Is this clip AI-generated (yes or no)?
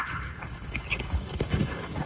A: yes